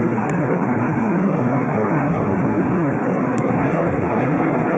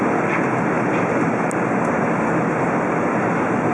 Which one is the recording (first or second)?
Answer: second